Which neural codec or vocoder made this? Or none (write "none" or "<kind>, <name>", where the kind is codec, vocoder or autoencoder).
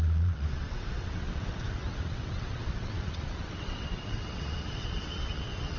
vocoder, WaveNeXt